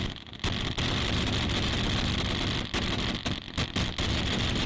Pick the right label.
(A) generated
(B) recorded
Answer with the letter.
B